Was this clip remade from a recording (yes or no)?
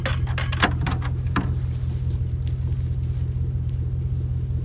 no